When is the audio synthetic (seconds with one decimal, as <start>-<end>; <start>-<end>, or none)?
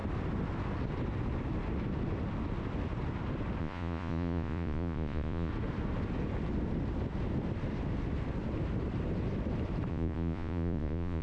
3.6-5.5; 9.9-11.2